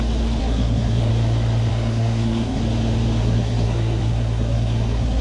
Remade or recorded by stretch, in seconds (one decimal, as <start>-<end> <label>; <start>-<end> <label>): 0.0-0.4 recorded; 0.4-1.1 remade; 1.1-1.7 recorded; 1.7-2.6 remade; 2.6-3.2 recorded; 3.2-5.2 remade

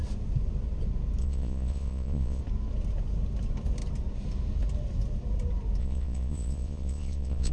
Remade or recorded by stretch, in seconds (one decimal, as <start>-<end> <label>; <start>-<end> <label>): 0.0-1.2 recorded; 1.2-2.4 remade; 2.4-5.8 recorded; 5.8-7.5 remade

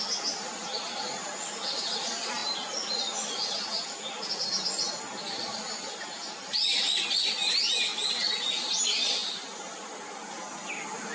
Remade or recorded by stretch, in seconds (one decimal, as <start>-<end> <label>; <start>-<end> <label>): 0.0-11.1 recorded